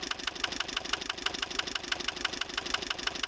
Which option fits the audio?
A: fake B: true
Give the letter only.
B